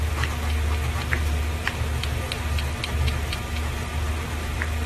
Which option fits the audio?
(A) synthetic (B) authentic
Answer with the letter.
B